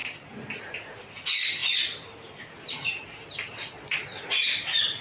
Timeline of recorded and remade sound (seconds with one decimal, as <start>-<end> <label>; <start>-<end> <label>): 0.0-5.0 recorded